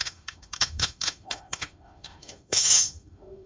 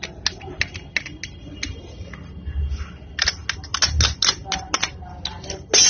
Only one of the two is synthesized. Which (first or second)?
first